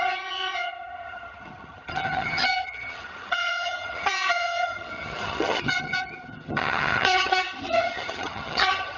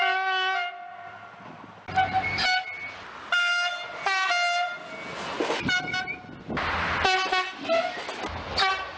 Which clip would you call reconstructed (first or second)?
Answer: first